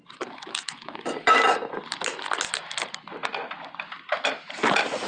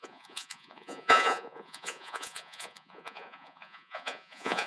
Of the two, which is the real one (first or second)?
first